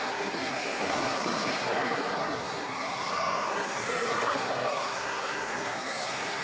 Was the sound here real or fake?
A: fake